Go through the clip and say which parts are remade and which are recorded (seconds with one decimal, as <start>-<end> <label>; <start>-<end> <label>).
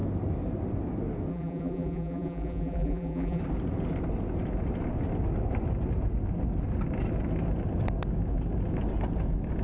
0.0-1.3 recorded; 1.3-3.4 remade; 3.4-9.6 recorded